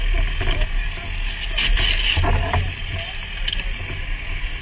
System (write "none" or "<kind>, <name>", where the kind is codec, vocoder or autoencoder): none